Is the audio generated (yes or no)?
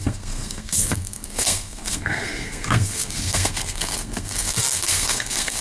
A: yes